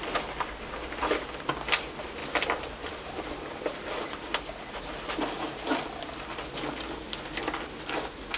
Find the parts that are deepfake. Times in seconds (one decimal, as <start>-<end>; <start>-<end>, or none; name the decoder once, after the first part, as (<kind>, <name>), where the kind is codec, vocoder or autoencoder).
none